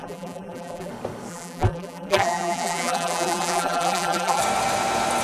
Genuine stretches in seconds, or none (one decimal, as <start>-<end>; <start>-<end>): 0.9-1.3; 4.4-5.2